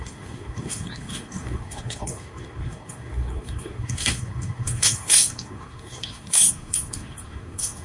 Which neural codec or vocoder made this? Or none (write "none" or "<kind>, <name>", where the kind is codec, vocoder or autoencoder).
codec, SNAC